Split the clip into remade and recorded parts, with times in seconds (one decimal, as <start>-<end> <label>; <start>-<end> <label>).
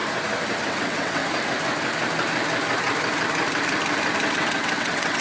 0.0-0.7 recorded; 0.7-1.2 remade; 1.2-4.3 recorded; 4.3-5.2 remade